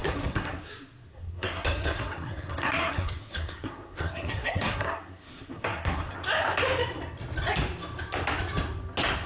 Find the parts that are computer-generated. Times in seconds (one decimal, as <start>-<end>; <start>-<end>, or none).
0.0-0.7; 1.1-6.1